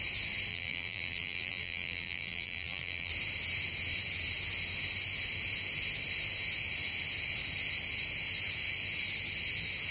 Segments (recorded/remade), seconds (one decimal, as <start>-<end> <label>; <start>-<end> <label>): 0.0-0.5 recorded; 0.5-3.1 remade; 3.1-9.9 recorded